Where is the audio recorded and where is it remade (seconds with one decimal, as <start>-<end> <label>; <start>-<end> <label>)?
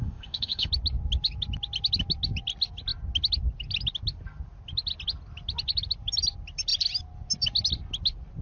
0.0-0.7 remade; 0.7-8.4 recorded